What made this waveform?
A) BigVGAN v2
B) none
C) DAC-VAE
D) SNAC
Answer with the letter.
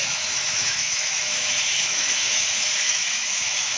C